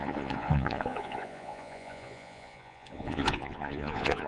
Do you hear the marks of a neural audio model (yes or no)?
yes